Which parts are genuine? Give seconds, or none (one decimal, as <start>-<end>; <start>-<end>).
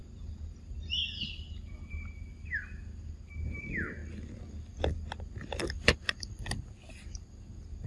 0.0-7.9